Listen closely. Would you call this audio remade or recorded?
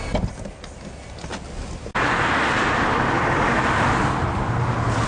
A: recorded